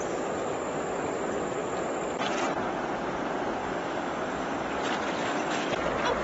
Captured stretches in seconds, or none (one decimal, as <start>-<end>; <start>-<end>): 0.0-3.6; 4.8-5.2; 5.7-6.2